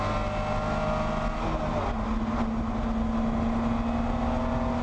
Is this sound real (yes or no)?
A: yes